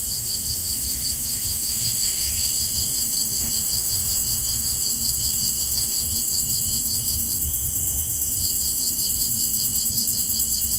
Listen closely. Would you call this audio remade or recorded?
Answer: remade